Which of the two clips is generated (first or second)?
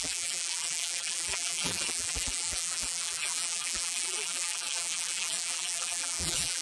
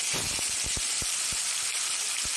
first